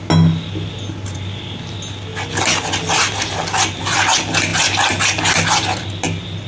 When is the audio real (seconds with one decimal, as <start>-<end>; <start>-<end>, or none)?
0.0-6.5